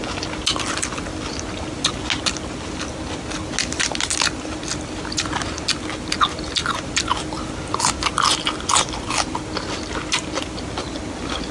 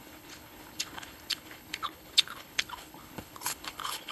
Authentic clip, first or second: first